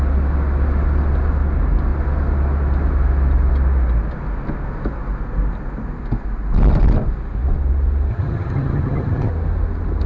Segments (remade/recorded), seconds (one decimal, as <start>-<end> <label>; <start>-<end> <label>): 0.0-8.1 recorded; 8.1-9.3 remade; 9.3-10.1 recorded